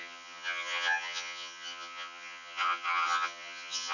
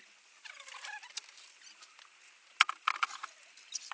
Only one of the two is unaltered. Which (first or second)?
second